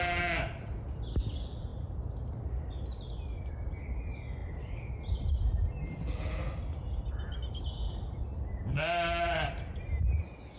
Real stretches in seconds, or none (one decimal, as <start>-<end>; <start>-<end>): 0.0-10.6